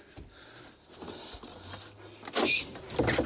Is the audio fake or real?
real